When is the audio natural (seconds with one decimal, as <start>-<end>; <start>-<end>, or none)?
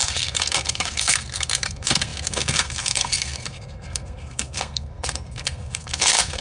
none